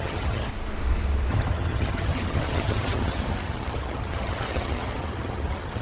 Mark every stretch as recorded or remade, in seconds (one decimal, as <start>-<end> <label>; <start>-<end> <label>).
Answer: 0.0-0.5 remade; 0.5-1.3 recorded; 1.3-5.8 remade